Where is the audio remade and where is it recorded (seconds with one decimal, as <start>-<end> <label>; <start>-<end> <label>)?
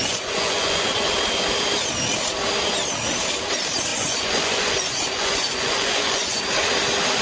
0.0-1.1 remade; 1.1-3.9 recorded; 3.9-6.4 remade; 6.4-7.2 recorded